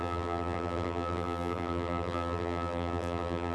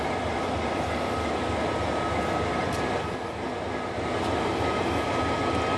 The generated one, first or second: first